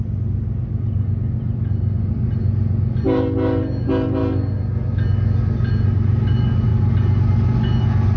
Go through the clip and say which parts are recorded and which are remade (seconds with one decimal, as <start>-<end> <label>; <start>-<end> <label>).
0.0-8.2 recorded